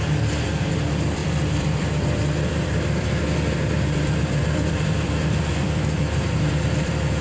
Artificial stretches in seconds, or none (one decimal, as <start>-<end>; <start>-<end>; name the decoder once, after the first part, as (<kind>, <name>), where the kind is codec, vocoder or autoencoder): 0.0-7.2 (vocoder, BigVGAN v2)